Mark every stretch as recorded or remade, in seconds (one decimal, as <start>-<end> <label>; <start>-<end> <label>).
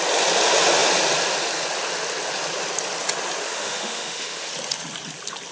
0.0-3.4 recorded; 3.4-4.5 remade; 4.5-5.5 recorded